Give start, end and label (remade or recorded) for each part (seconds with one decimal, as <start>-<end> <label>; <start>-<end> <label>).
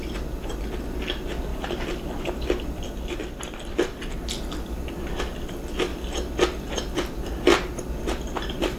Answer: 0.0-1.5 recorded; 1.5-5.2 remade; 5.2-8.8 recorded